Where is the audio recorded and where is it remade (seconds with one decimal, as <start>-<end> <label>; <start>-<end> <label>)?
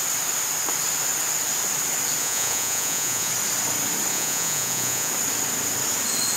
0.0-2.2 recorded; 2.2-3.3 remade; 3.3-4.1 recorded; 4.1-5.1 remade; 5.1-6.4 recorded